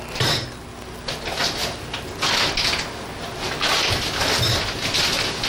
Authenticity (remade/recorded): recorded